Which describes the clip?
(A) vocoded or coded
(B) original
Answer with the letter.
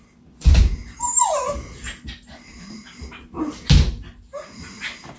B